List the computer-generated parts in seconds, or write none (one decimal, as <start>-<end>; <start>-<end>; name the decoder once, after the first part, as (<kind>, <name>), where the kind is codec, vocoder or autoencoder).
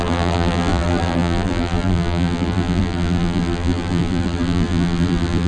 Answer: 0.0-5.5 (vocoder, BigVGAN v2)